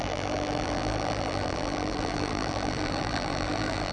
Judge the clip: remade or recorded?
remade